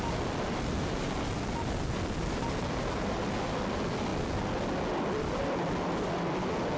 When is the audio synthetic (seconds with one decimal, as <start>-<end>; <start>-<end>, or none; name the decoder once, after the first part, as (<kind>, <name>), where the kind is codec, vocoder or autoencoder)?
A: none